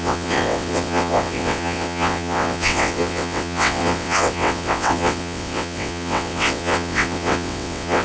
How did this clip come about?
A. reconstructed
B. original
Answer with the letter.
A